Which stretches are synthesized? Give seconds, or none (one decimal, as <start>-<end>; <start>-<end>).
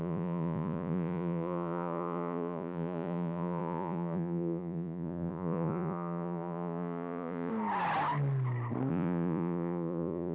0.0-7.5; 8.9-10.3